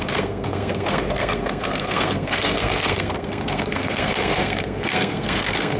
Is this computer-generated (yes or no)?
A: yes